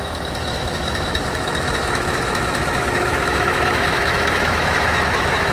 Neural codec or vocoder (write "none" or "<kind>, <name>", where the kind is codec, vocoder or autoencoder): autoencoder, DAC-VAE